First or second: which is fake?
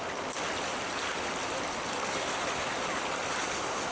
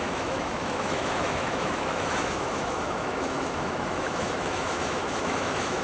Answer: second